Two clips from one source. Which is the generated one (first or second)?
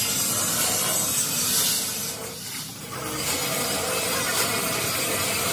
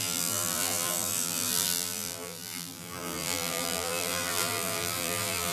second